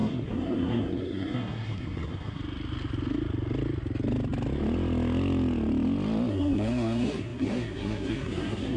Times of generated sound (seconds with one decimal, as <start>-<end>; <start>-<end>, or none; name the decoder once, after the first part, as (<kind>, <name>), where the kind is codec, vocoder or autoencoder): 0.0-2.4 (codec, SNAC); 6.3-8.8